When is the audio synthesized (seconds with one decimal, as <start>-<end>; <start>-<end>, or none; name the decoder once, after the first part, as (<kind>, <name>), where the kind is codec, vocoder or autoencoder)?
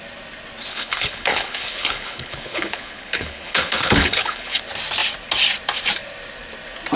0.7-4.6 (codec, HILCodec)